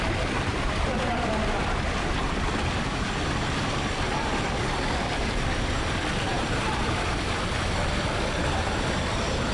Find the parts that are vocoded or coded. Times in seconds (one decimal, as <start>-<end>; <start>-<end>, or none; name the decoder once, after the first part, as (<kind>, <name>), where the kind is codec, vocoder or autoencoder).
0.5-4.1 (vocoder, BigVGAN v2); 6.3-7.2